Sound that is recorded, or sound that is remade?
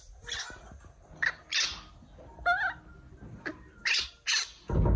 recorded